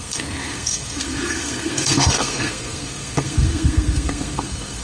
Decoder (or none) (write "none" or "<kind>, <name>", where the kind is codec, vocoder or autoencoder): codec, SNAC